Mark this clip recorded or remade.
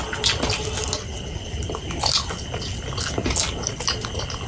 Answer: recorded